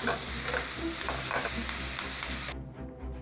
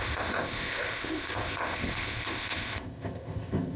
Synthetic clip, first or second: second